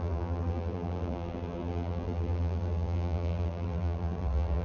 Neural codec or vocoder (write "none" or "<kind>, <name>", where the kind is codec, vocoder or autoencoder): vocoder, BigVGAN v2